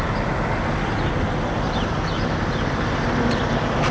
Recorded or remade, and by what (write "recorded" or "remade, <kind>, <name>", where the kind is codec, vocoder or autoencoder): recorded